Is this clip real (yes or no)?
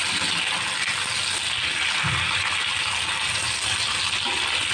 yes